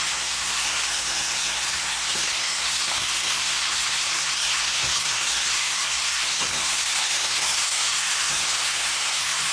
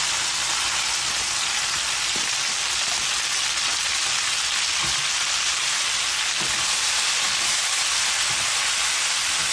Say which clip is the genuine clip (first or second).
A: second